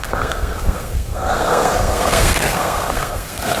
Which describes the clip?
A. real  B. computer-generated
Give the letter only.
B